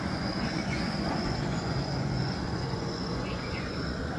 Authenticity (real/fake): fake